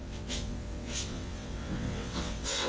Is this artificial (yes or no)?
yes